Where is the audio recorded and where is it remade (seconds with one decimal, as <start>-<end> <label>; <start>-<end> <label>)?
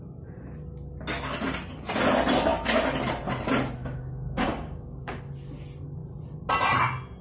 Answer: 0.0-3.8 recorded; 3.8-5.2 remade; 5.2-7.2 recorded